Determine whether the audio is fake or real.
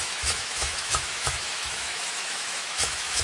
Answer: fake